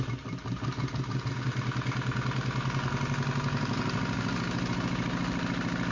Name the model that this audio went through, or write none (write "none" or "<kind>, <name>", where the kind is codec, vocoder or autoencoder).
none